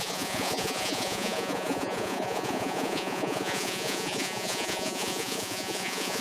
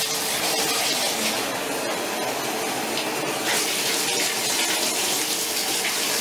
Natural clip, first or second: second